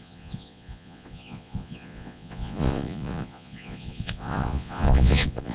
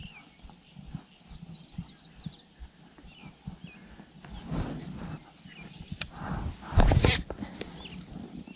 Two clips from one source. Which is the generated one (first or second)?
first